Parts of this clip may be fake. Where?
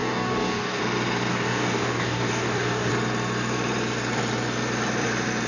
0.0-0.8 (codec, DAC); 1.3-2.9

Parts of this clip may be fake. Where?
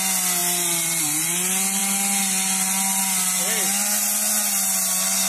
none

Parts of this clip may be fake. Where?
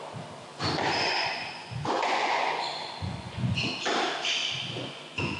0.5-3.7 (vocoder, Vocos); 4.4-5.4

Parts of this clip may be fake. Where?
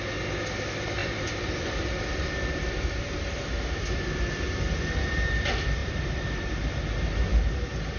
1.0-4.5 (vocoder, BigVGAN v2); 5.8-6.5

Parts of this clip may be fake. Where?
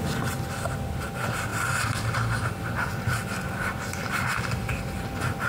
none